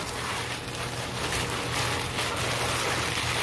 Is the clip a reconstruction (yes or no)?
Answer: no